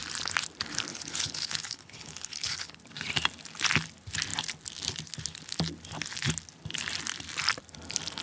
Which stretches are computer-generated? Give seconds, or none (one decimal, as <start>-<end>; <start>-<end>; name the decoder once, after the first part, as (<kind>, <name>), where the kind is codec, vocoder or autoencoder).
0.9-2.8 (codec, HILCodec)